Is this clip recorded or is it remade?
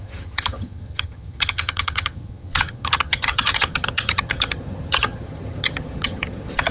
remade